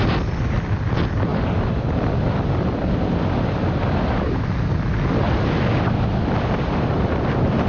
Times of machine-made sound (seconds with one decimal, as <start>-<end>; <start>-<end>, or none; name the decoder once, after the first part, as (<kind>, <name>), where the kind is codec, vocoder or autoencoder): none